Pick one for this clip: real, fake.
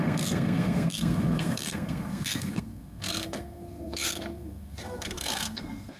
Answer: fake